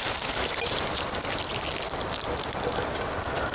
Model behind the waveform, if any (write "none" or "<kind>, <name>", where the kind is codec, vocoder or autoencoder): vocoder, BigVGAN v2